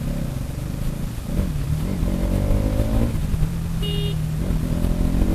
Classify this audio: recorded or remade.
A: recorded